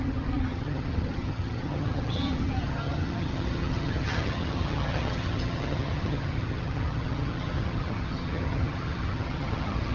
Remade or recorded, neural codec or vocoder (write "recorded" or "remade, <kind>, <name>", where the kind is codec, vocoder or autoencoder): remade, vocoder, HiFi-GAN